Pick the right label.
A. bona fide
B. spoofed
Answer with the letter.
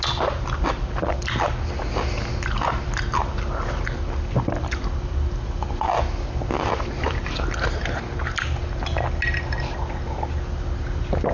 A